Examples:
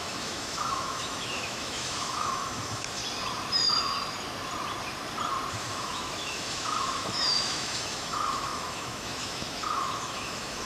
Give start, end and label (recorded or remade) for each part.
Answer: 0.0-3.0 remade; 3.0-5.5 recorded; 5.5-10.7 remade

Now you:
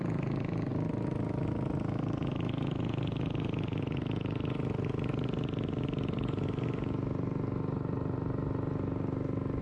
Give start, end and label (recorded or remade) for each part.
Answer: 0.0-9.6 recorded

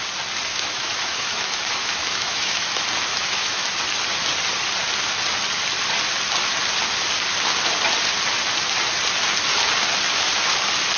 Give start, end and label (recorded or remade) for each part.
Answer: 0.0-0.5 recorded; 0.5-2.7 remade; 2.7-3.1 recorded; 3.1-3.7 remade; 3.7-11.0 recorded

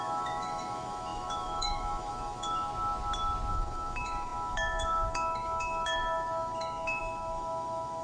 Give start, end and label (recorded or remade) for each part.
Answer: 0.0-2.7 remade; 2.7-3.5 recorded; 3.5-8.0 remade

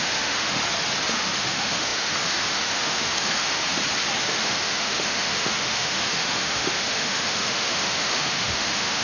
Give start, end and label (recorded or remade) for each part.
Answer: 0.0-0.6 remade; 0.6-1.1 recorded; 1.1-3.6 remade; 3.6-4.2 recorded; 4.2-9.0 remade

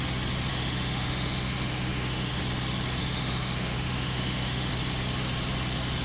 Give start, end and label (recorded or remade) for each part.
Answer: 0.0-0.5 recorded; 0.5-2.4 remade; 2.4-3.0 recorded; 3.0-4.7 remade; 4.7-6.0 recorded

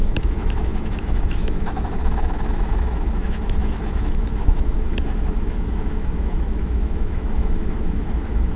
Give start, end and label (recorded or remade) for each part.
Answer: 0.0-8.6 remade

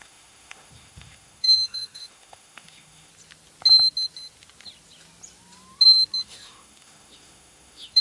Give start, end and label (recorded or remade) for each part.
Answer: 0.0-3.1 remade; 3.1-6.2 recorded; 6.2-8.0 remade